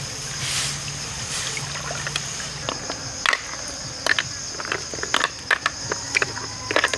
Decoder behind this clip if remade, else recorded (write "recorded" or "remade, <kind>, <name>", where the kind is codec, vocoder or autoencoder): recorded